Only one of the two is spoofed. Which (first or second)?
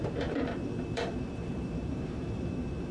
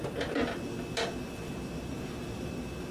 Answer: first